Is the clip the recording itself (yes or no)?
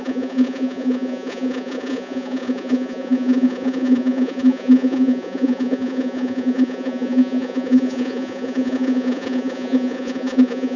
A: no